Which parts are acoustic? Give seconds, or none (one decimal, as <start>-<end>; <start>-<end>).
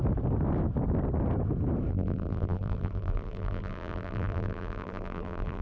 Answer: 0.0-1.9